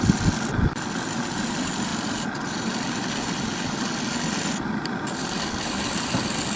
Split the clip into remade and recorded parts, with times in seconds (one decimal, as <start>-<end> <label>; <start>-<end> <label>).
0.0-6.6 recorded

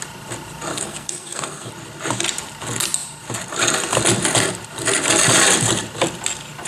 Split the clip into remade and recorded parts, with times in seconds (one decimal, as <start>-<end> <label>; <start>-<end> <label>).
0.0-0.7 recorded; 0.7-1.7 remade; 1.7-6.7 recorded

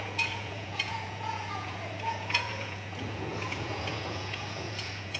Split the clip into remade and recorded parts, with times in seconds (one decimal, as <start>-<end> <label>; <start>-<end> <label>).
0.0-5.2 remade

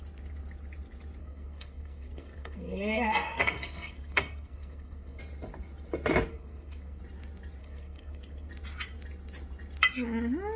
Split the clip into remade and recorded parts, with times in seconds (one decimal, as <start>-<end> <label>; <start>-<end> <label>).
0.0-1.2 recorded; 1.2-5.2 remade; 5.2-6.3 recorded; 6.3-7.0 remade; 7.0-7.6 recorded; 7.6-8.5 remade; 8.5-10.6 recorded

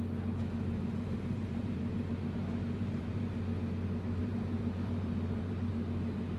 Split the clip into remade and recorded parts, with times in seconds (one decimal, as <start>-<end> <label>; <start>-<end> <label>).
0.0-0.4 recorded; 0.4-3.4 remade; 3.4-4.2 recorded; 4.2-5.7 remade; 5.7-6.4 recorded